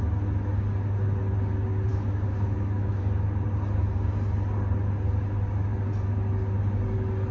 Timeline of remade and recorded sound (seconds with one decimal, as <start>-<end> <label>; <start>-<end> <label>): 0.0-1.9 recorded; 1.9-3.0 remade; 3.0-7.3 recorded